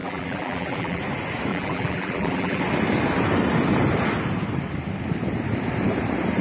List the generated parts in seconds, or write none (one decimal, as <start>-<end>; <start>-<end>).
0.0-1.0; 1.5-2.6